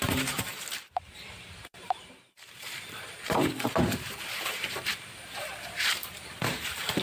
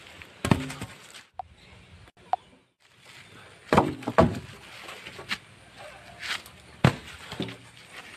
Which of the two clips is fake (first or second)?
first